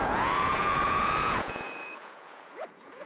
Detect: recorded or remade remade